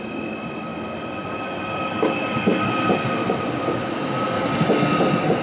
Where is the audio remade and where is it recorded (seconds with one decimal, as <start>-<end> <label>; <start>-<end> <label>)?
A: 0.0-5.4 recorded